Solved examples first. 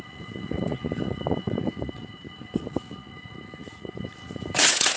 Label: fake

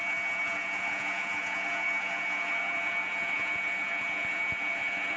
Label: fake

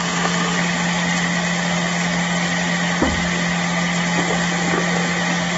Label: real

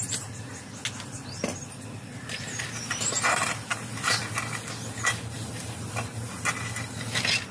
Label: real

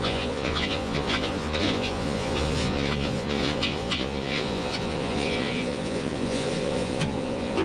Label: fake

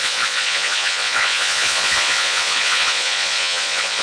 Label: fake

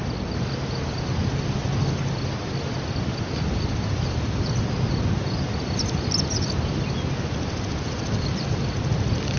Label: real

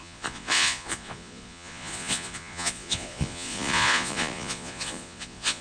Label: fake